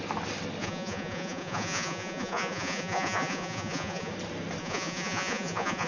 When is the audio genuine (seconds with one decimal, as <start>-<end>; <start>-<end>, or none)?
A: 0.0-0.6; 4.1-4.6